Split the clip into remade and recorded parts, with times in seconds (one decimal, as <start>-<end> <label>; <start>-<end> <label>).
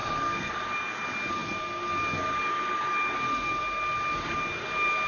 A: 0.0-0.5 remade; 0.5-5.1 recorded